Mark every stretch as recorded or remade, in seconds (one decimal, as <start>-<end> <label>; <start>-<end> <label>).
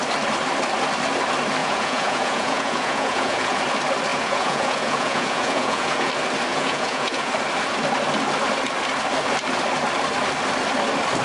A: 0.0-1.6 recorded; 1.6-3.6 remade; 3.6-4.1 recorded; 4.1-6.1 remade; 6.1-6.5 recorded; 6.5-7.3 remade; 7.3-11.2 recorded